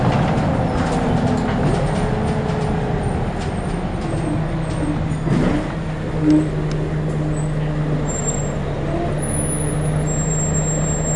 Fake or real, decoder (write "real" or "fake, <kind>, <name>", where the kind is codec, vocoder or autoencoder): real